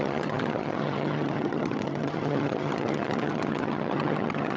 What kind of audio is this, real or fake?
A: fake